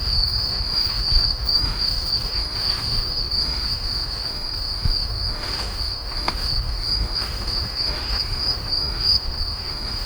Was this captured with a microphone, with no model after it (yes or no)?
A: no